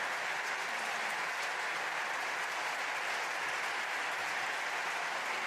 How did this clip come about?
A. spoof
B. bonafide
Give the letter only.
B